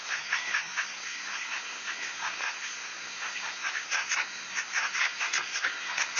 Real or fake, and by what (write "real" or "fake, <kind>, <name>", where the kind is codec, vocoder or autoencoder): fake, codec, SNAC